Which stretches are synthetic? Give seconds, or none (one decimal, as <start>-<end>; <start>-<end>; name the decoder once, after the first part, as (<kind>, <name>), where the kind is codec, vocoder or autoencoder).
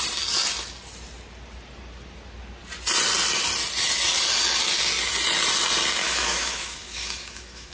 6.0-7.7 (autoencoder, DAC-VAE)